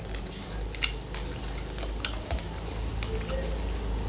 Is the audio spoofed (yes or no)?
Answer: no